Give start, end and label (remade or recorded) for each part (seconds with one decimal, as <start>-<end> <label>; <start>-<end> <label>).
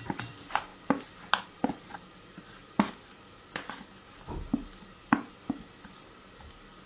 0.0-6.9 recorded